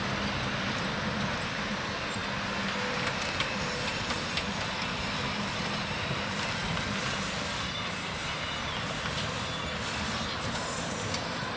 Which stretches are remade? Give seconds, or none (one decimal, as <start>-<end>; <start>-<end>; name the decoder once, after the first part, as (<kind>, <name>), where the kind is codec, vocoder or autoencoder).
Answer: none